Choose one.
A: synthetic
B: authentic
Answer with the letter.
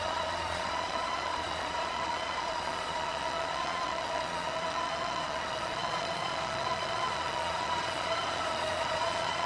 A